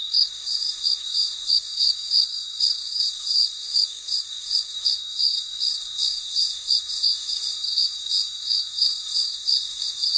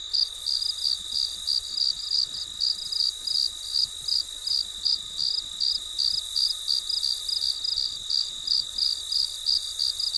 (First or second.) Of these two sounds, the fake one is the first